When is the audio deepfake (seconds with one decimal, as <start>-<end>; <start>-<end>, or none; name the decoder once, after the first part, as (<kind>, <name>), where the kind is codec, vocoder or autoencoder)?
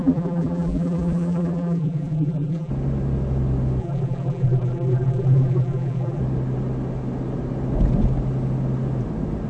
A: 0.0-2.7 (vocoder, BigVGAN v2); 3.8-6.2